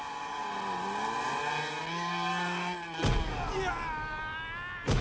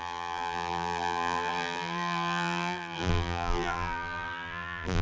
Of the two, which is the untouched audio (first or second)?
first